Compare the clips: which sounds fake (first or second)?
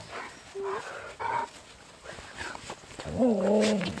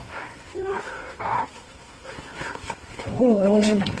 second